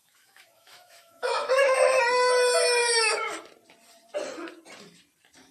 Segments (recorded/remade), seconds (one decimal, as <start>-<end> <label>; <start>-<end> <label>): 0.0-2.0 remade; 2.0-2.8 recorded; 2.8-3.3 remade; 3.3-5.5 recorded

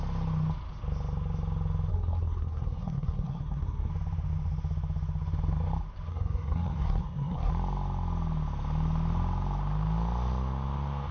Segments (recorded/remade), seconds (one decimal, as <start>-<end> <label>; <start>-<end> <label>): 0.0-1.9 recorded; 1.9-3.9 remade; 3.9-6.1 recorded; 6.1-7.5 remade; 7.5-11.1 recorded

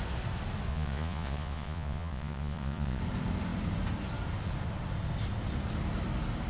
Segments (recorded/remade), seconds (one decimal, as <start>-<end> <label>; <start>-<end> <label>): 0.0-0.7 recorded; 0.7-3.0 remade; 3.0-6.5 recorded

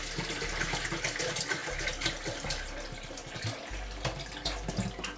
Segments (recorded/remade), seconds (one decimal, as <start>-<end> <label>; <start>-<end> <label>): 0.0-5.2 recorded